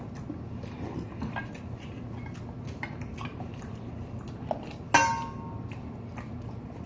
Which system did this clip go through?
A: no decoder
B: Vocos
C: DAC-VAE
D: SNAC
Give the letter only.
A